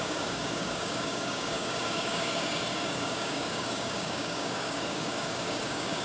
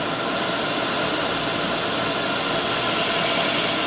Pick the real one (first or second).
second